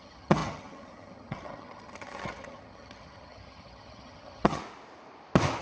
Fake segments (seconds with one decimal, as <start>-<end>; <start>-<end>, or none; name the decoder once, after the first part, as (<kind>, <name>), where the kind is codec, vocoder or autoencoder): 0.0-4.6 (vocoder, HiFi-GAN)